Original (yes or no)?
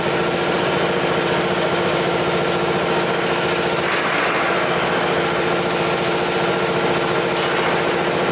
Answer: yes